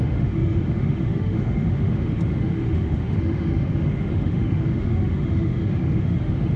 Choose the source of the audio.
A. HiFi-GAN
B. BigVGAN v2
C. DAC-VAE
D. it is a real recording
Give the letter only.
C